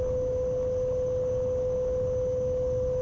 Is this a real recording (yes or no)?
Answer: yes